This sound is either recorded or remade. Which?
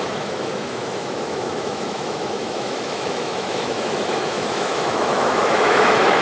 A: remade